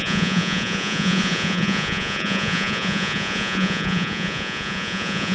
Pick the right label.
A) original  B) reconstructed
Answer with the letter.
B